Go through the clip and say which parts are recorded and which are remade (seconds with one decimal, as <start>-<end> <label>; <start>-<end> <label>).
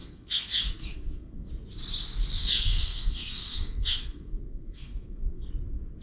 0.0-1.5 remade; 1.5-2.3 recorded; 2.3-5.5 remade; 5.5-6.0 recorded